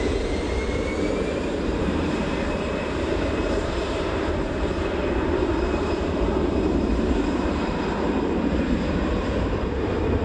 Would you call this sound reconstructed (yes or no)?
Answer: yes